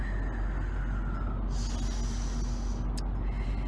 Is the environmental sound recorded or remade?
recorded